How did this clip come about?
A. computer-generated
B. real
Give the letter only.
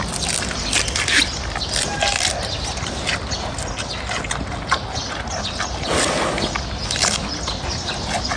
B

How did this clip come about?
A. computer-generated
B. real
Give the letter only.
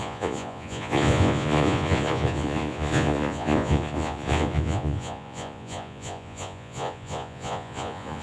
A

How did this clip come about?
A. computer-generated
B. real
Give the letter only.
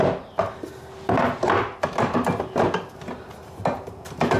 B